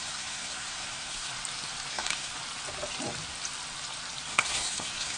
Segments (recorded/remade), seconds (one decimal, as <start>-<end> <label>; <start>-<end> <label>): 0.0-1.3 remade; 1.3-1.9 recorded; 1.9-2.3 remade; 2.3-4.3 recorded; 4.3-5.2 remade